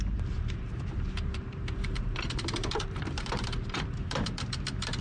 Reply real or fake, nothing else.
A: fake